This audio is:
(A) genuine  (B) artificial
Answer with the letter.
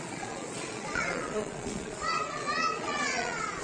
B